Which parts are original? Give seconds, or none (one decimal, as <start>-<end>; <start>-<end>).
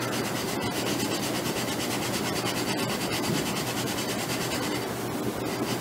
0.0-5.8